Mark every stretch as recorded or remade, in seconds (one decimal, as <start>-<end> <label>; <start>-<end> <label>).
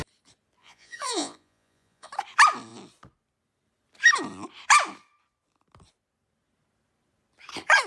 0.0-0.6 recorded; 0.6-2.1 remade; 2.1-7.9 recorded